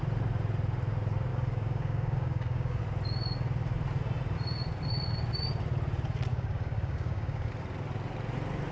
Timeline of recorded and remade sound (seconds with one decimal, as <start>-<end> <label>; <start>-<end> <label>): 0.0-1.3 recorded; 1.3-2.8 remade; 2.8-6.3 recorded; 6.3-7.5 remade; 7.5-8.7 recorded